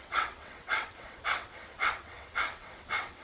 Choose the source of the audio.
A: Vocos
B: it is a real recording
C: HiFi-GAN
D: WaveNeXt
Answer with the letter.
D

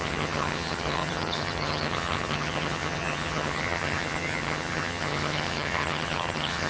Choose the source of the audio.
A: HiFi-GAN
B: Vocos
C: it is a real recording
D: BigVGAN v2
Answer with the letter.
A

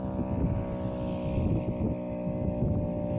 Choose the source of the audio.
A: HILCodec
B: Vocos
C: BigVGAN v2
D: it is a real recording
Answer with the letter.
D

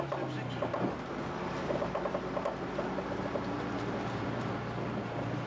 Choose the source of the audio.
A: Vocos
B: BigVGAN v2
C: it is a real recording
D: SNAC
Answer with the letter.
C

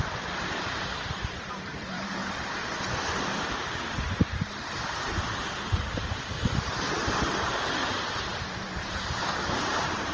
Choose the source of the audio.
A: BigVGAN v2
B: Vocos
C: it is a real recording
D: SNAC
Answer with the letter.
A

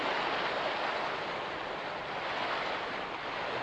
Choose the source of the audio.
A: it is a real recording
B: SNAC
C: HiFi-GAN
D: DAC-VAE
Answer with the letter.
A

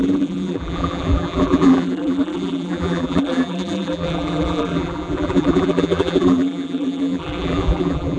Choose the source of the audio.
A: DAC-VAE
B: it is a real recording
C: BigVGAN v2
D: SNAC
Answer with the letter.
C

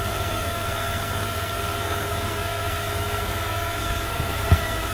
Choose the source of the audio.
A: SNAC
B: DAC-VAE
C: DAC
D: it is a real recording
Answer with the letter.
A